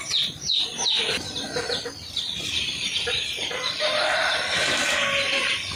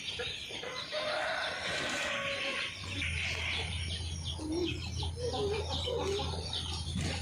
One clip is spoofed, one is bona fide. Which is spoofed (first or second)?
first